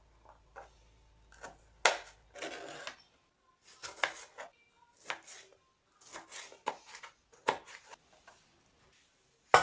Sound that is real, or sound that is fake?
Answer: real